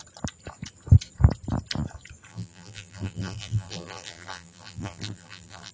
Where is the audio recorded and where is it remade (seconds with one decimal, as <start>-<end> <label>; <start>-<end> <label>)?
0.0-2.3 recorded; 2.3-5.7 remade